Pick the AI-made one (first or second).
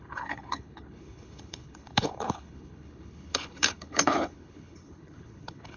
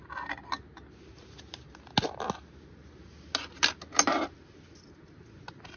first